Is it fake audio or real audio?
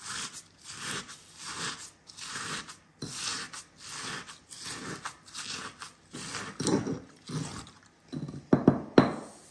real